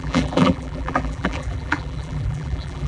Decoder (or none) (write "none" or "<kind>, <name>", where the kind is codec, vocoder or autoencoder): vocoder, BigVGAN v2